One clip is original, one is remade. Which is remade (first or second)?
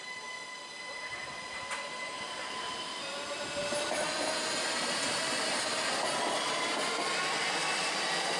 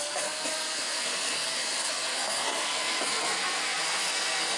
second